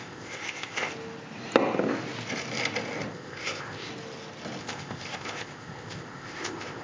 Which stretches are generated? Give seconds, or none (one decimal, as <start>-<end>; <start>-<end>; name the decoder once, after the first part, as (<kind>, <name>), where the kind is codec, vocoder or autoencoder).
0.0-0.9 (codec, ZipCodec); 3.1-3.9; 4.6-6.8